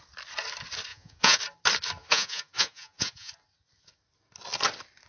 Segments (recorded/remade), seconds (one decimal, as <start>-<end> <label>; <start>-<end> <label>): 0.0-0.9 recorded; 0.9-1.4 remade; 1.4-2.0 recorded; 2.0-3.3 remade; 3.3-5.1 recorded